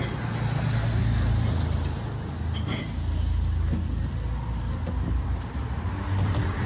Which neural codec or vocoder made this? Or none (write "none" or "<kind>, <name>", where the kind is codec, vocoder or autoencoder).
none